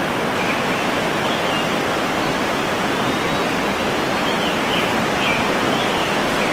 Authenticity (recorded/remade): recorded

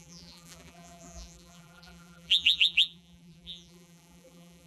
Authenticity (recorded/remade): remade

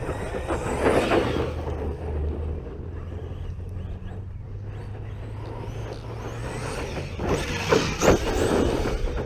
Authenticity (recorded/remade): recorded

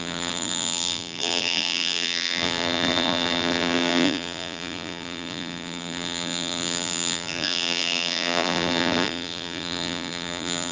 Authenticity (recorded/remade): remade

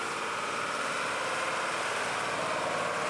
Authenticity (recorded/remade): recorded